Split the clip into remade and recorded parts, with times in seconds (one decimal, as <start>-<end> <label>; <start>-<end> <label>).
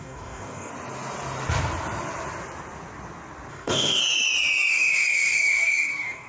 0.0-0.7 remade; 0.7-3.5 recorded; 3.5-4.0 remade; 4.0-4.7 recorded; 4.7-6.3 remade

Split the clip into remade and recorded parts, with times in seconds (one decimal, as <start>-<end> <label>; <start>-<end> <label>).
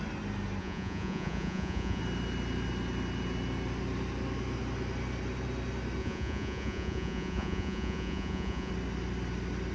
0.0-0.6 recorded; 0.6-2.0 remade; 2.0-6.0 recorded; 6.0-8.7 remade; 8.7-9.7 recorded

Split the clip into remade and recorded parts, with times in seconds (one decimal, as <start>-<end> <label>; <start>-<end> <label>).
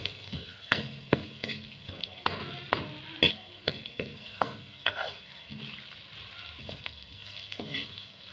0.0-2.4 remade; 2.4-3.3 recorded; 3.3-5.6 remade; 5.6-6.6 recorded; 6.6-8.3 remade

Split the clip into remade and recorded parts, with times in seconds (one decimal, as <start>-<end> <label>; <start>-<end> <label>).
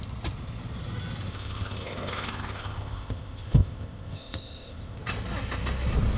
0.0-1.3 recorded; 1.3-5.0 remade; 5.0-6.2 recorded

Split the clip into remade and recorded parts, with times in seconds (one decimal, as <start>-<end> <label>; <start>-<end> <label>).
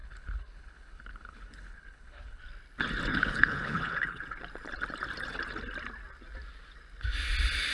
0.0-2.4 remade; 2.4-3.1 recorded; 3.1-4.2 remade; 4.2-7.7 recorded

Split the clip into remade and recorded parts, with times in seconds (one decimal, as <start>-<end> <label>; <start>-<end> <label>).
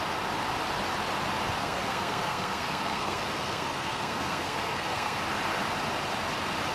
0.0-1.6 recorded; 1.6-5.2 remade; 5.2-6.7 recorded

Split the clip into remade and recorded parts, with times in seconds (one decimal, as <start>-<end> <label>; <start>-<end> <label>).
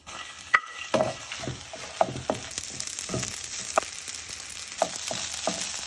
0.0-1.3 remade; 1.3-5.9 recorded